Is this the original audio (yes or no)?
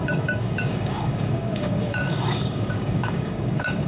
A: no